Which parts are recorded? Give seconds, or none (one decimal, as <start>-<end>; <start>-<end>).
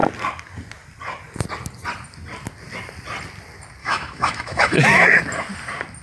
0.0-3.8; 5.2-6.0